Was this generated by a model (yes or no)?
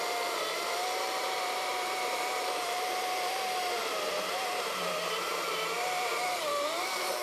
yes